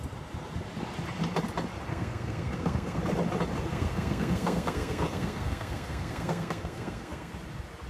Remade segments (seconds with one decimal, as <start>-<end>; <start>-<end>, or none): 1.9-3.0; 3.7-7.3